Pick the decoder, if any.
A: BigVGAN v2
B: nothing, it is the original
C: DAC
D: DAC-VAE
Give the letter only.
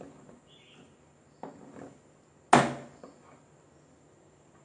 B